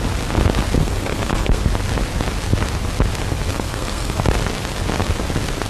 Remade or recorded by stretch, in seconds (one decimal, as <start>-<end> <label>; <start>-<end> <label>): 0.0-0.8 recorded; 0.8-1.6 remade; 1.6-3.5 recorded; 3.5-4.2 remade; 4.2-5.7 recorded